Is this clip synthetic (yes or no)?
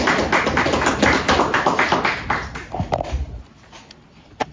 no